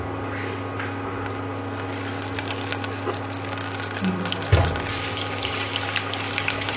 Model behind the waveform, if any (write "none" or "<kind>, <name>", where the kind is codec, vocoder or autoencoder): none